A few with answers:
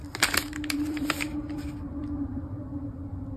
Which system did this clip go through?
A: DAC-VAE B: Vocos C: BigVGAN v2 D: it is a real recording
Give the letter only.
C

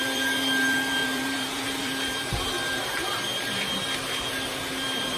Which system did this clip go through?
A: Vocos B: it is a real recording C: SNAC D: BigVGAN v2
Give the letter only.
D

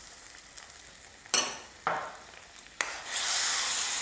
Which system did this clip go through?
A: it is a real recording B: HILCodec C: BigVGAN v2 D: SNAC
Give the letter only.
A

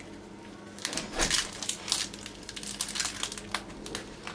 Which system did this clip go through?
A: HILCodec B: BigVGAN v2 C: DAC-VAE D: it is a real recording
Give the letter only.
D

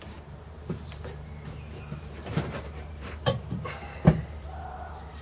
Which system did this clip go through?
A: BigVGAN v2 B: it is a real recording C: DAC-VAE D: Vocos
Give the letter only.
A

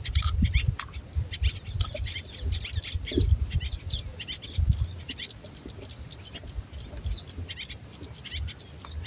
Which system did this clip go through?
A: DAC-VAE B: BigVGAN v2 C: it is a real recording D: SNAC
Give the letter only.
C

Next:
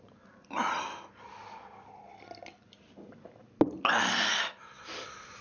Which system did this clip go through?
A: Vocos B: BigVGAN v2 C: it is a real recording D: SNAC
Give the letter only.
C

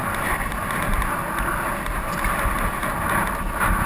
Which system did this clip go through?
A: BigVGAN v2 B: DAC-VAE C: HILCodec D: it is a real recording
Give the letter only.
D